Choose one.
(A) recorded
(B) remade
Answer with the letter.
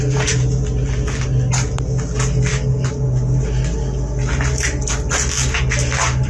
A